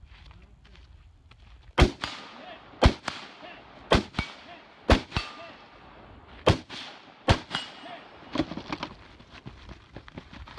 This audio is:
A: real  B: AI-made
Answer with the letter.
A